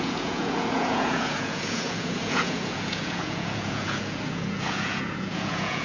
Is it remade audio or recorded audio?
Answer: remade